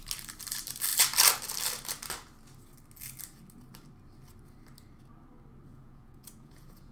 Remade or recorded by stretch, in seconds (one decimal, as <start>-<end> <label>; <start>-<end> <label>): 0.0-5.7 recorded; 5.7-6.9 remade